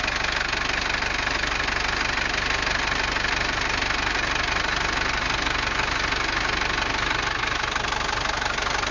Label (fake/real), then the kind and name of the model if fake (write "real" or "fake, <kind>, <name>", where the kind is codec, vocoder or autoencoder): real